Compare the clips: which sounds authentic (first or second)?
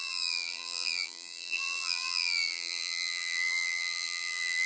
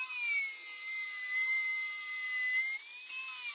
second